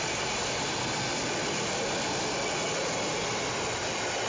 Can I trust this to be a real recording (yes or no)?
yes